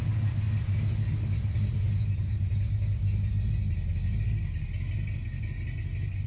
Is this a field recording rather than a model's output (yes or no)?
yes